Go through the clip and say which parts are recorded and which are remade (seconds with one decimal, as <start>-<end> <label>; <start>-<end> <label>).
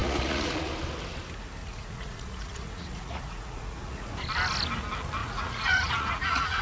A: 0.0-0.7 remade; 0.7-1.6 recorded; 1.6-4.1 remade; 4.1-5.2 recorded; 5.2-6.6 remade